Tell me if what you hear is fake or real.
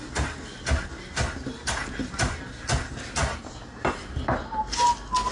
real